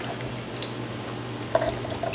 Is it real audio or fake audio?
real